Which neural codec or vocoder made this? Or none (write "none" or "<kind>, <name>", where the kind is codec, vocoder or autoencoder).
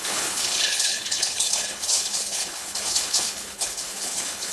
codec, HILCodec